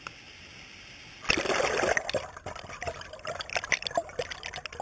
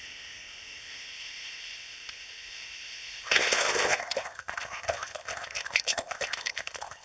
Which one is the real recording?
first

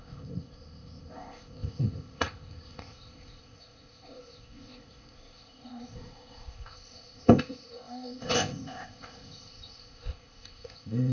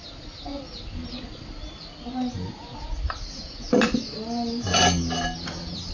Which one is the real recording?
second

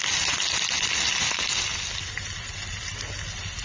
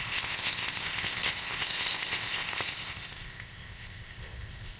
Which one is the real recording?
first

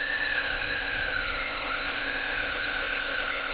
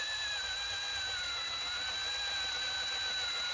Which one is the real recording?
second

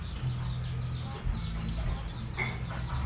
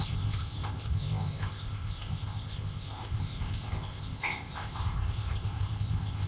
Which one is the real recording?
first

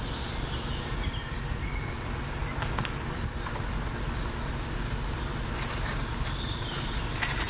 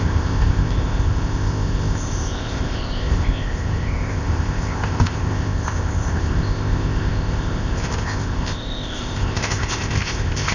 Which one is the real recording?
first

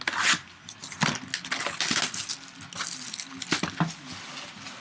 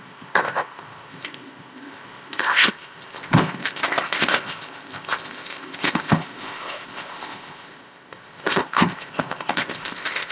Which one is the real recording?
first